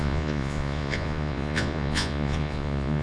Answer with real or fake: fake